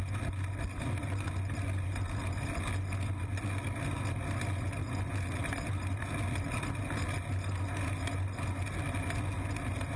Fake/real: real